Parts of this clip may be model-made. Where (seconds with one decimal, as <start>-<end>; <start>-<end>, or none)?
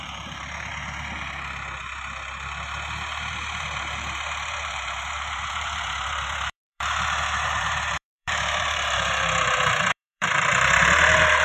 0.0-0.7; 3.3-11.4